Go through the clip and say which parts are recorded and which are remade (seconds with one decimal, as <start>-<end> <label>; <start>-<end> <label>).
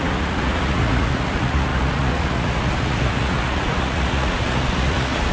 0.0-5.3 remade